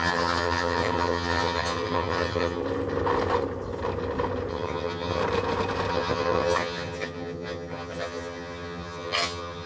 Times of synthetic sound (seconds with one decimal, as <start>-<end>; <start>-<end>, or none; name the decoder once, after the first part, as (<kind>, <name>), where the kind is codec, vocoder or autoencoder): 0.0-2.6 (vocoder, HiFi-GAN); 4.5-5.2; 5.9-9.7